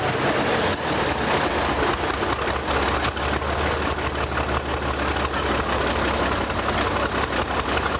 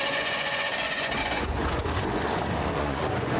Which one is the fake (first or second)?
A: second